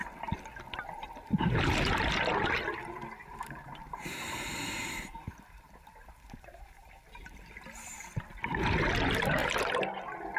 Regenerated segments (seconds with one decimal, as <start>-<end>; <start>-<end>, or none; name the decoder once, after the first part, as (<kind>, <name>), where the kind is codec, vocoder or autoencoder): 3.2-7.0 (vocoder, BigVGAN v2)